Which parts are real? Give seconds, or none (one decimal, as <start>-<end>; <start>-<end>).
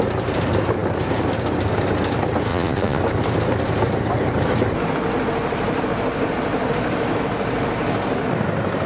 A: 0.0-2.5; 3.0-8.9